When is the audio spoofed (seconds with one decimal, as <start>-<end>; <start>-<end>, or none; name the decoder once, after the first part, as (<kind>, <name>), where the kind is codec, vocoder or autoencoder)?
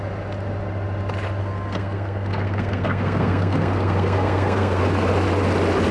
1.4-4.8 (codec, SNAC)